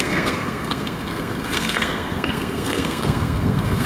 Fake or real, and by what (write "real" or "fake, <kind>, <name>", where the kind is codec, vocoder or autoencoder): fake, codec, SNAC